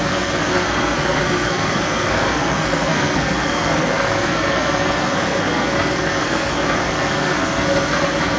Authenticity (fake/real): fake